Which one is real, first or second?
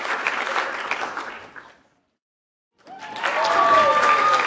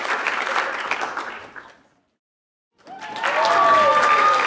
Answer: second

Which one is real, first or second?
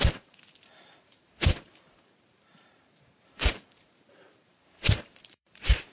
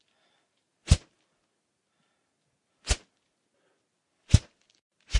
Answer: second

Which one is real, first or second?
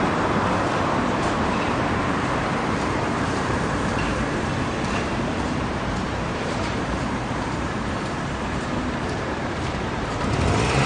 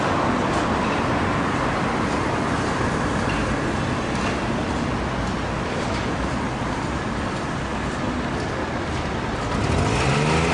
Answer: second